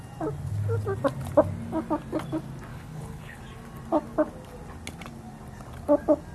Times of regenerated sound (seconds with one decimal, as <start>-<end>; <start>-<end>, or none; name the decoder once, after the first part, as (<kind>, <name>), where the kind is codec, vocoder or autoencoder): 2.7-3.4 (codec, HILCodec)